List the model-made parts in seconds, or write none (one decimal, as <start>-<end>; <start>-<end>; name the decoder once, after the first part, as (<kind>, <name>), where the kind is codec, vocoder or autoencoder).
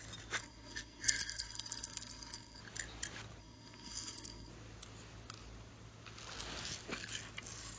0.4-2.6 (codec, SNAC); 3.4-4.5